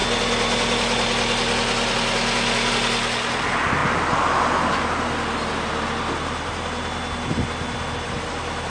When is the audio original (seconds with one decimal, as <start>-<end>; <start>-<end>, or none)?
0.0-8.7